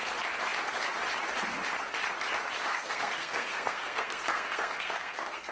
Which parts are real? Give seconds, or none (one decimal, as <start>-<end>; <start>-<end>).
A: 0.0-2.7